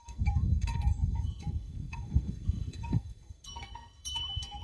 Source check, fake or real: fake